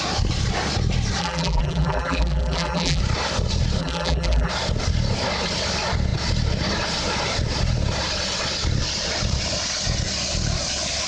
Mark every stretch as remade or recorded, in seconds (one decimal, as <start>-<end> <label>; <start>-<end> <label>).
0.0-1.2 recorded; 1.2-3.0 remade; 3.0-3.8 recorded; 3.8-4.5 remade; 4.5-11.1 recorded